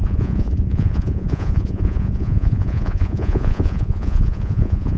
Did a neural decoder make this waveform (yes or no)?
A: yes